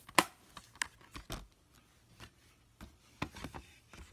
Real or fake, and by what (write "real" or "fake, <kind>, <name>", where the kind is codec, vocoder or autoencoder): real